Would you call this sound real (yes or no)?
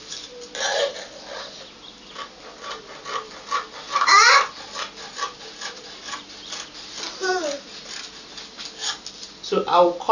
yes